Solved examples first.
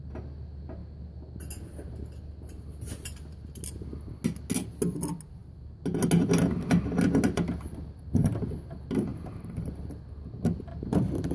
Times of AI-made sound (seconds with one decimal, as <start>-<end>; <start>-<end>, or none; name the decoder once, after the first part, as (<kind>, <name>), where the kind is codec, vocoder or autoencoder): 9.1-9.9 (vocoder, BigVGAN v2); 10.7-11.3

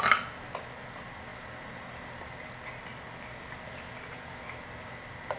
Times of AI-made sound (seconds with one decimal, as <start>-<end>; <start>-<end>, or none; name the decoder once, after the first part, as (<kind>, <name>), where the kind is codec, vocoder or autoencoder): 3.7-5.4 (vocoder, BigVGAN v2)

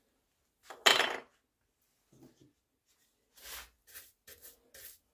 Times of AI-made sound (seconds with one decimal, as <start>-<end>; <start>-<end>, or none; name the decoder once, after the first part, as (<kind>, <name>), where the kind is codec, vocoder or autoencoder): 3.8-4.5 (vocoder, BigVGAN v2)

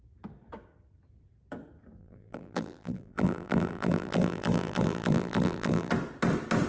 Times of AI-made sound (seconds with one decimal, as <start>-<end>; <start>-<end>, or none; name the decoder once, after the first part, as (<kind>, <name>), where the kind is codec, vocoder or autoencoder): 2.0-5.9 (vocoder, BigVGAN v2)